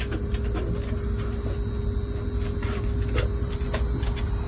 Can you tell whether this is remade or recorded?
recorded